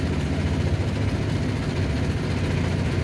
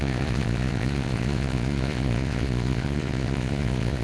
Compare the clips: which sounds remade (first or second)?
second